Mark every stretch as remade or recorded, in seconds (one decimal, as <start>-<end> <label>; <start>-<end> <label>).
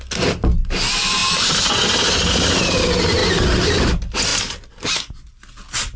0.0-6.0 recorded